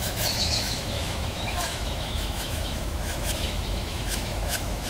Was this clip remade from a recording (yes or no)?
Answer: yes